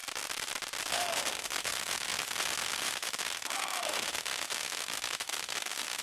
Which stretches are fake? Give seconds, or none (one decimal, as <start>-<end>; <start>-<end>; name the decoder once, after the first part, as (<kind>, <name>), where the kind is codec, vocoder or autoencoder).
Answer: 0.9-6.0 (autoencoder, DAC-VAE)